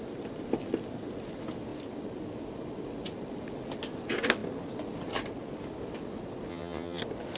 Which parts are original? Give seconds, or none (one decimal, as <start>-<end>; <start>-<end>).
0.0-6.5; 7.0-7.4